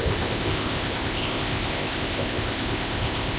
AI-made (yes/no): yes